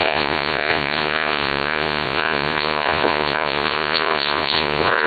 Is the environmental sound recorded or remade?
remade